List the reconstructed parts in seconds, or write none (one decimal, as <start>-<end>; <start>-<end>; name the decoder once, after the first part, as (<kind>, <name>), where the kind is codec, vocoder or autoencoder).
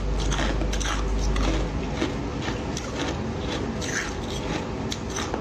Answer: 2.3-3.7 (vocoder, BigVGAN v2)